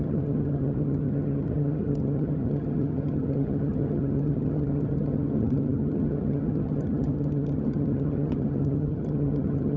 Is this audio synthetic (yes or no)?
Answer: yes